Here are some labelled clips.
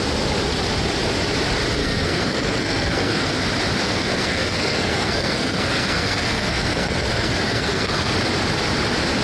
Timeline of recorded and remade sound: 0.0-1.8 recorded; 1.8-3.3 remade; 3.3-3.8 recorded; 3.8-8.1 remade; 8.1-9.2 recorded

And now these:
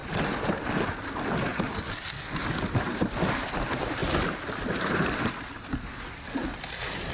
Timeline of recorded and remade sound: 0.0-7.1 recorded

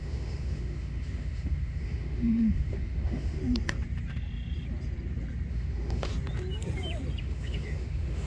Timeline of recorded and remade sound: 0.0-3.4 remade; 3.4-5.5 recorded; 5.5-6.1 remade; 6.1-7.2 recorded; 7.2-8.3 remade

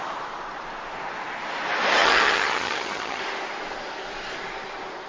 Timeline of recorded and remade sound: 0.0-2.0 recorded; 2.0-3.2 remade; 3.2-5.1 recorded

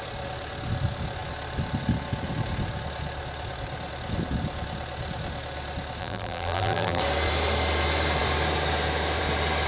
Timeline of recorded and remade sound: 0.0-6.0 recorded; 6.0-7.0 remade; 7.0-9.7 recorded